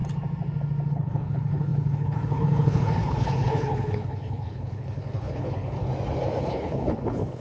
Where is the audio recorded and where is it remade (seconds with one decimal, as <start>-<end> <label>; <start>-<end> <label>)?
0.0-0.9 recorded; 0.9-5.9 remade; 5.9-6.4 recorded; 6.4-7.4 remade